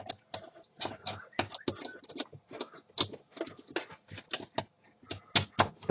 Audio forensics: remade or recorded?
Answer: recorded